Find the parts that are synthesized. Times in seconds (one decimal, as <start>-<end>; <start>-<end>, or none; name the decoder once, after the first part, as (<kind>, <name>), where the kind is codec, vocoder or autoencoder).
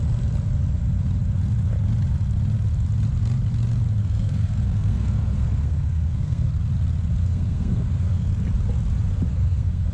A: 4.0-6.5 (codec, SNAC); 7.2-8.3; 9.3-9.9